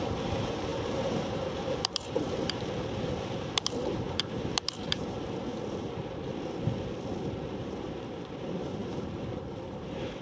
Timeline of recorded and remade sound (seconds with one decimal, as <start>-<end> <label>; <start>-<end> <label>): 0.0-6.3 remade; 6.3-7.2 recorded; 7.2-10.2 remade